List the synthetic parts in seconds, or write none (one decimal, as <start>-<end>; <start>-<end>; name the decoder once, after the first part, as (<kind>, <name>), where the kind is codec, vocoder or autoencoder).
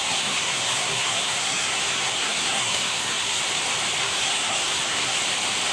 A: 0.0-3.4 (codec, SNAC); 4.0-5.2